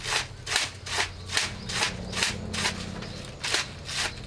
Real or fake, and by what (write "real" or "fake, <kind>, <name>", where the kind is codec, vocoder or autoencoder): real